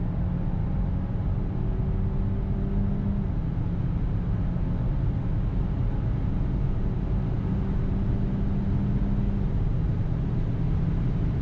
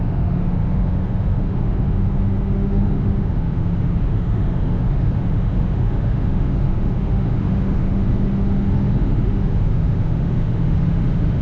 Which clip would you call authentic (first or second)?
first